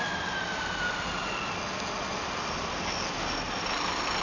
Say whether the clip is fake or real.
real